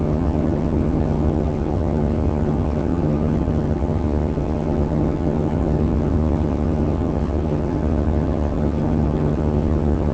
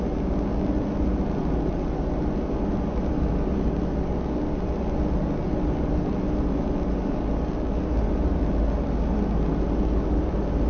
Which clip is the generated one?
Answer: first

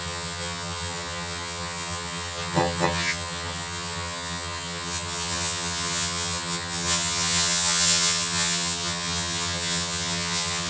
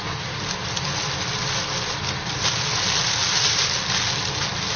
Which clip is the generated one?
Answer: first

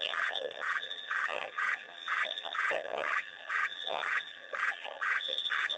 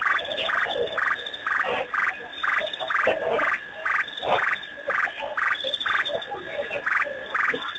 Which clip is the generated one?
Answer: first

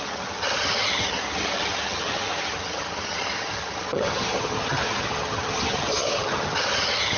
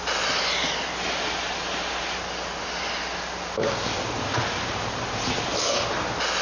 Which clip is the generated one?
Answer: first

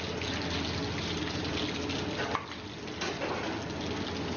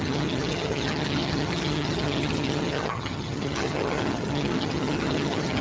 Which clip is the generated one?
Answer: second